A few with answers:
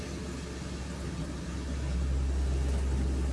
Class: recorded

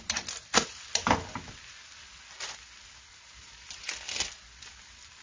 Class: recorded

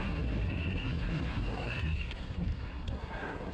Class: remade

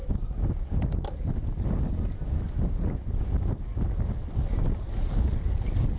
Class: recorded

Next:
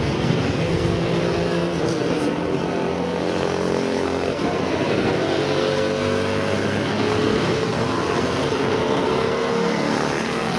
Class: remade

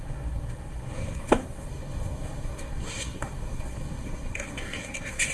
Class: remade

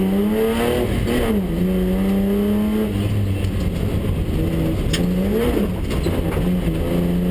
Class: recorded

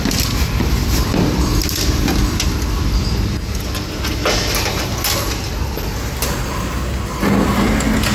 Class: recorded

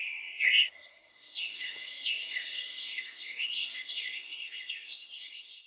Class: remade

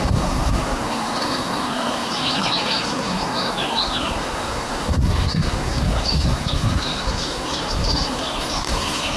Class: remade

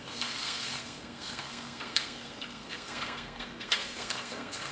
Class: remade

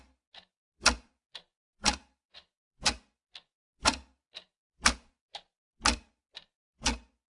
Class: recorded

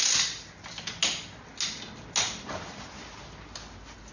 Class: recorded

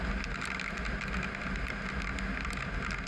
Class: recorded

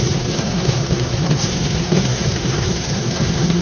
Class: remade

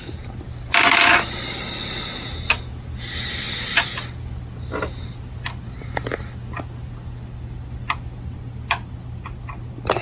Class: recorded